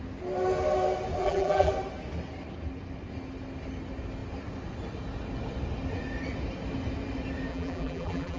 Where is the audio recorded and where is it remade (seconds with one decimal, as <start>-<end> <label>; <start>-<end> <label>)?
0.0-1.2 recorded; 1.2-1.7 remade; 1.7-7.5 recorded; 7.5-8.4 remade